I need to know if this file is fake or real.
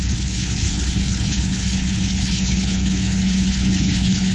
fake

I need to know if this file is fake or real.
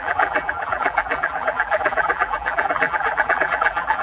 fake